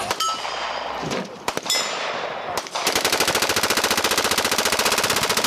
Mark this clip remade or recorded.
remade